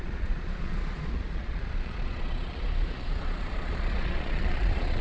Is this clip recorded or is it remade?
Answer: remade